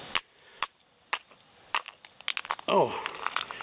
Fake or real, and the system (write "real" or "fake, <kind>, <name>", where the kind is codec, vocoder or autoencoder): real